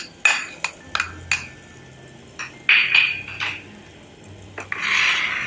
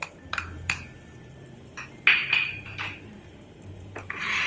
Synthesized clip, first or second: second